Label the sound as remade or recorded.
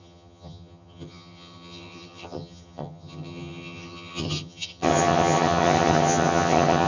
remade